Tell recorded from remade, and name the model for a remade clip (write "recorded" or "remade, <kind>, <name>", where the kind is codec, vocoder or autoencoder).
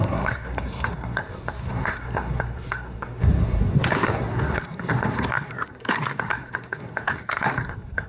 remade, codec, SNAC